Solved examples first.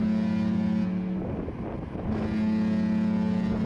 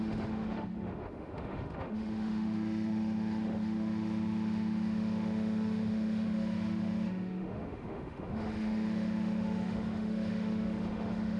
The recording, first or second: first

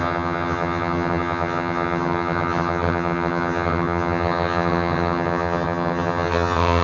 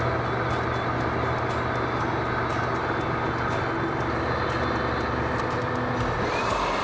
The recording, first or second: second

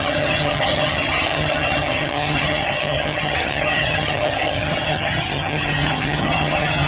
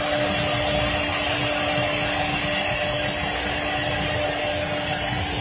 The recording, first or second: second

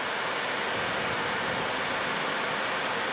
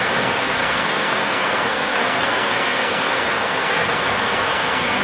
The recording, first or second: first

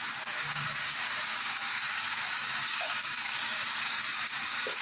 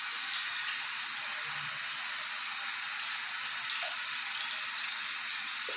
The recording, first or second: second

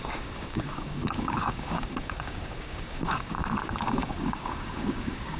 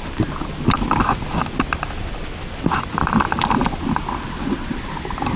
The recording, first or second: second